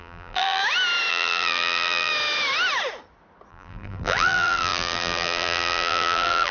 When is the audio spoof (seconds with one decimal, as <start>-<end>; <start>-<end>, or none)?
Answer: 0.0-0.6; 1.1-2.1; 3.5-6.5